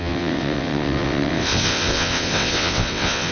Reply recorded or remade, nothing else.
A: remade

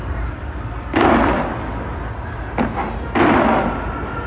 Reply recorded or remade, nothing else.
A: recorded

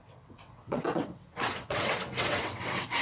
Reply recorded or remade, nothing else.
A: remade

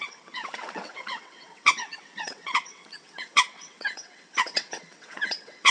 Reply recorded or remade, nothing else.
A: remade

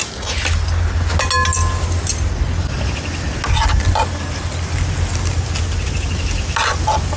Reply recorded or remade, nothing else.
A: recorded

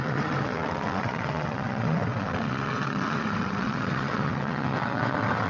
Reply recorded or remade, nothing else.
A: remade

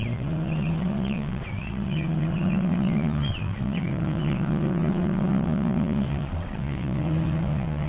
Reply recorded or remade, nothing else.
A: remade